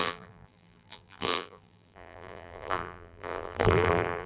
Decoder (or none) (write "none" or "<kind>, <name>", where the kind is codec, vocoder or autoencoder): vocoder, BigVGAN v2